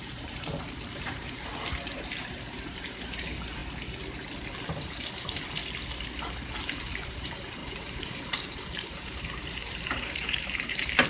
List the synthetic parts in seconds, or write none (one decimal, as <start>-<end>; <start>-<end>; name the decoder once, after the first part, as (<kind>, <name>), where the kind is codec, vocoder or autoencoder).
0.0-3.6 (vocoder, BigVGAN v2); 5.1-5.6; 6.7-11.1